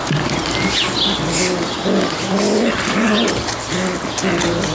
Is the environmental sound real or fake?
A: real